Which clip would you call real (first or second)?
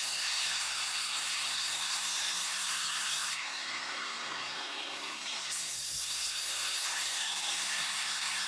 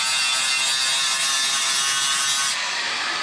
second